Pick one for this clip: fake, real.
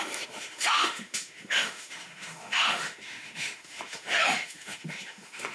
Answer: fake